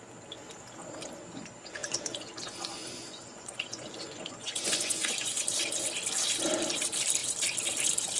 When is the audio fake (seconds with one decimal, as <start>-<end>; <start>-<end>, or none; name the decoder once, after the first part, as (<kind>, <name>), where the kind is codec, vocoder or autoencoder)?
1.8-5.4 (vocoder, Vocos)